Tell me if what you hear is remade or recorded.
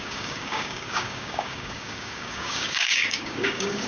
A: remade